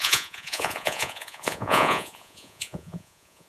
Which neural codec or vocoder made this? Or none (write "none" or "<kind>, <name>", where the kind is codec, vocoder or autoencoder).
vocoder, Vocos